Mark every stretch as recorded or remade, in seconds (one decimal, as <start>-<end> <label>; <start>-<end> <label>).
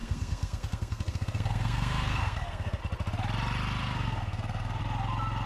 0.0-2.8 remade; 2.8-3.8 recorded; 3.8-4.8 remade; 4.8-5.5 recorded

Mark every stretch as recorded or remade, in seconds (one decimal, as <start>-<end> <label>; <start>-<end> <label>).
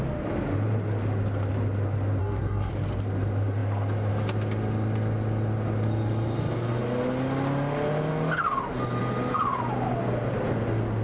0.0-2.2 recorded; 2.2-2.7 remade; 2.7-11.0 recorded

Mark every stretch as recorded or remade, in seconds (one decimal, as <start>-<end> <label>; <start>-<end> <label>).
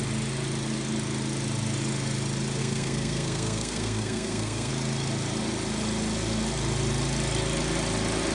0.0-2.6 recorded; 2.6-4.7 remade; 4.7-8.3 recorded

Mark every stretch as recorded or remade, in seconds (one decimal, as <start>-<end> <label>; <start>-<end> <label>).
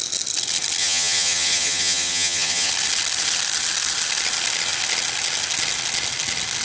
0.0-0.8 recorded; 0.8-2.7 remade; 2.7-6.6 recorded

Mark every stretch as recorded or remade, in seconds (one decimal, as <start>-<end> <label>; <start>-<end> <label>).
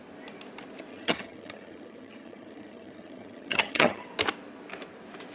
0.0-0.9 recorded; 0.9-4.1 remade; 4.1-5.3 recorded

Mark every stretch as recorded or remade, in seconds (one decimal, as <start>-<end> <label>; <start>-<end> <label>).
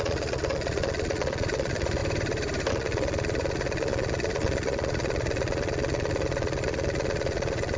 0.0-2.0 remade; 2.0-2.7 recorded; 2.7-7.8 remade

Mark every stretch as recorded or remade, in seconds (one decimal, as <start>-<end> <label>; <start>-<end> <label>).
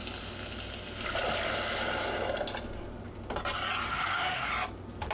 0.0-3.9 recorded; 3.9-4.5 remade; 4.5-5.1 recorded